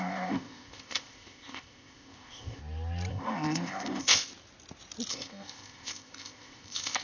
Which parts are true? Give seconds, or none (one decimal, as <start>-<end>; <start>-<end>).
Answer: 2.6-3.1; 4.3-5.1